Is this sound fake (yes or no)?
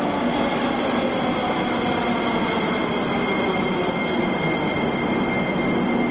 no